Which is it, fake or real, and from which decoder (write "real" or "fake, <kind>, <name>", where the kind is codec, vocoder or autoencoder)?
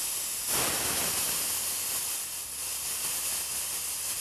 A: real